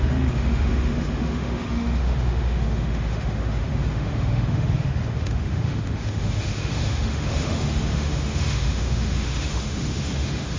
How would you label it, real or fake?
fake